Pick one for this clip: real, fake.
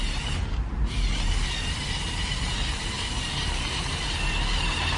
real